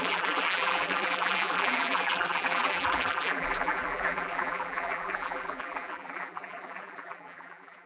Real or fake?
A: fake